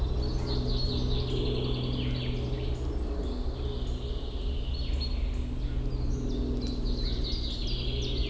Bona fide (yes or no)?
yes